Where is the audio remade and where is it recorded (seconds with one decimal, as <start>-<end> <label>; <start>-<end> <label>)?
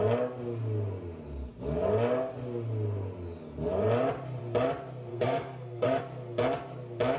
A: 0.0-5.1 recorded; 5.1-6.0 remade; 6.0-7.2 recorded